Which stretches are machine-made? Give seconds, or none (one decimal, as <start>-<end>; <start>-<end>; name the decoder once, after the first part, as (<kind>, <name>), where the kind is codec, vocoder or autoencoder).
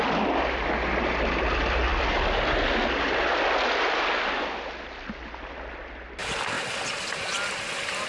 none